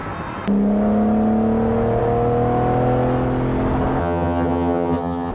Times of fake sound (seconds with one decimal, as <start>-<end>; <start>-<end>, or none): 4.0-5.3